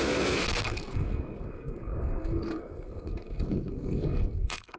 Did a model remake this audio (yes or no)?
yes